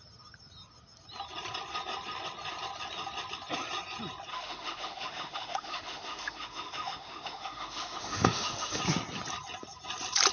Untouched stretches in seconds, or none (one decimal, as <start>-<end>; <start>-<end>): 0.0-4.3; 8.8-10.3